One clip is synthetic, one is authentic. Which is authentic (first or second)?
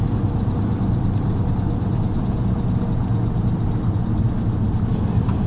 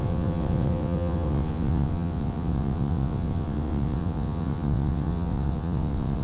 first